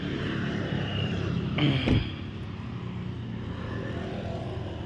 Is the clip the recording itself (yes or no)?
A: yes